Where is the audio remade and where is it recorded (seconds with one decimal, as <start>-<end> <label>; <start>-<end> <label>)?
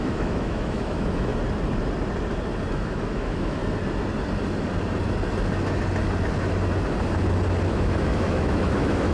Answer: 0.0-1.3 remade; 1.3-2.7 recorded; 2.7-3.6 remade; 3.6-7.7 recorded; 7.7-9.1 remade